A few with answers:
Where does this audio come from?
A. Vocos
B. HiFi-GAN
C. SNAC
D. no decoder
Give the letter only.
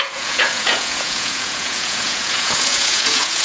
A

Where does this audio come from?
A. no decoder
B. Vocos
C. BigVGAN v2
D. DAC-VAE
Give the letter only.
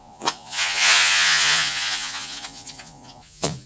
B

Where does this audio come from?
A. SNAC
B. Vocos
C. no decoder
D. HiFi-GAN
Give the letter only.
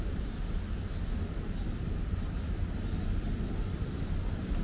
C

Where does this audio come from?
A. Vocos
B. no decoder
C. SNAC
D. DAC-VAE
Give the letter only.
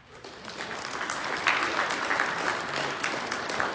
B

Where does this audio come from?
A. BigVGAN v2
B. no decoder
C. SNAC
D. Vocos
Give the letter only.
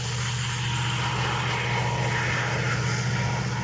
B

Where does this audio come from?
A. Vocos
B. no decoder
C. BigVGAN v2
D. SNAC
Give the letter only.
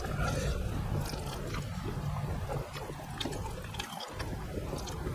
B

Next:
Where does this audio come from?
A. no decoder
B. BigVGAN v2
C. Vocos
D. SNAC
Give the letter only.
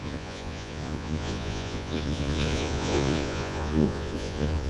C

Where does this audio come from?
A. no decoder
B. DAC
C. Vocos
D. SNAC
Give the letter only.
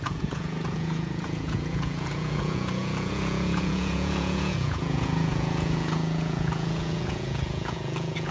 C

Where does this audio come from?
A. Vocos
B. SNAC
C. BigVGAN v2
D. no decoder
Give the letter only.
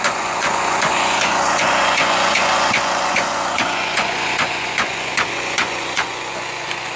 A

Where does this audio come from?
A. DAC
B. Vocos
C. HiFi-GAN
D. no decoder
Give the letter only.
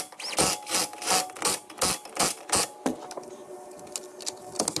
D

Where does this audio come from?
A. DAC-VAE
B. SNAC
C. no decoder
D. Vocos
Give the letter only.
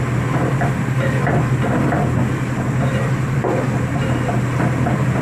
C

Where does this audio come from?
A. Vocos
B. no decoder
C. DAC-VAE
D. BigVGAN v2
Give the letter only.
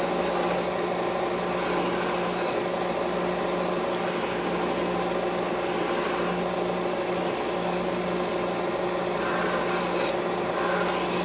B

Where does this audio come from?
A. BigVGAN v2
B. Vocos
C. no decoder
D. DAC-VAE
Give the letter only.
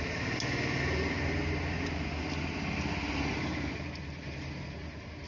C